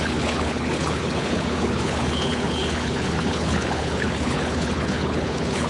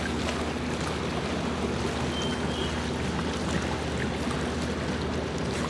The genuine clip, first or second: second